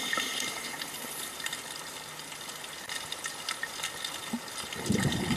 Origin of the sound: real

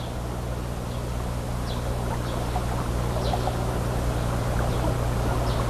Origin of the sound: real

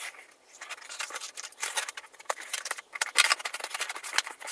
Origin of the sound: real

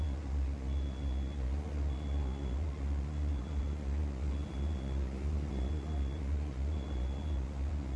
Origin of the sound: fake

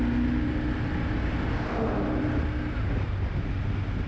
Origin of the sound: real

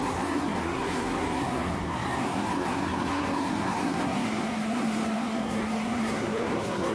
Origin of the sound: fake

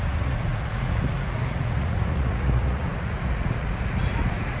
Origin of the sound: fake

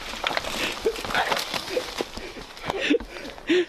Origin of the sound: real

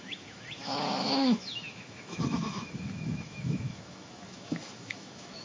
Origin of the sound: fake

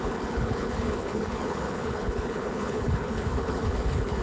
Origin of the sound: fake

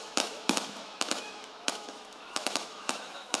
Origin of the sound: fake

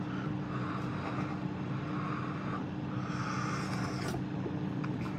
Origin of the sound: real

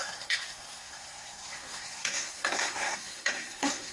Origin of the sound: fake